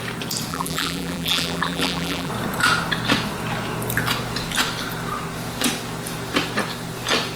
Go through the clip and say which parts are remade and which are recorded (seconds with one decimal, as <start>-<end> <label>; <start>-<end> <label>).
0.0-0.5 recorded; 0.5-2.3 remade; 2.3-7.4 recorded